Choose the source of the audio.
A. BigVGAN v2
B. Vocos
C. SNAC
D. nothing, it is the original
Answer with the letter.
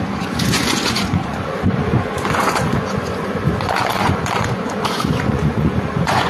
B